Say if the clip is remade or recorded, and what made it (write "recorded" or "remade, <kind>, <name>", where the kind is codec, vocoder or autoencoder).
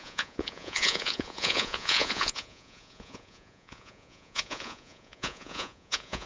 remade, vocoder, Vocos